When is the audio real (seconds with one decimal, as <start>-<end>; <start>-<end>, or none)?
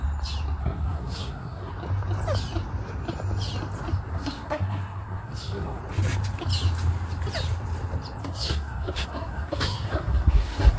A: 0.0-0.6; 1.7-4.1; 5.8-8.2